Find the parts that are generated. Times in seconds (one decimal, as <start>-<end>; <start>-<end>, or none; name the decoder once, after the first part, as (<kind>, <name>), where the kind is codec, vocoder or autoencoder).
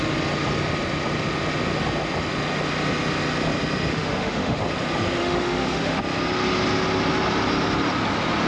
3.9-4.6 (autoencoder, DAC-VAE); 5.2-6.0